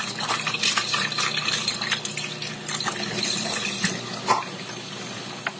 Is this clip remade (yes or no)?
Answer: no